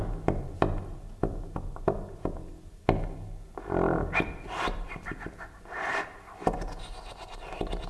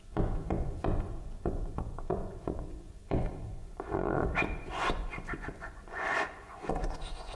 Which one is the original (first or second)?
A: first